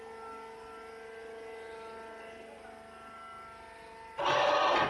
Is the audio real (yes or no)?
yes